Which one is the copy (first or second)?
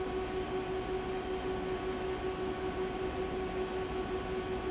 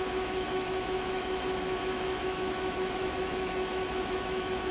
second